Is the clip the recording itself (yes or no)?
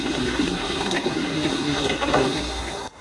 no